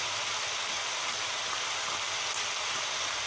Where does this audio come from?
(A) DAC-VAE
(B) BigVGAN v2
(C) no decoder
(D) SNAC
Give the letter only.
C